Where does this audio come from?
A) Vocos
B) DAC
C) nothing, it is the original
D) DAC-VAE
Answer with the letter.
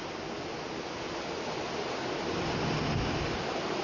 C